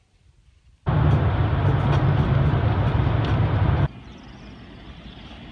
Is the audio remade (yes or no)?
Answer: no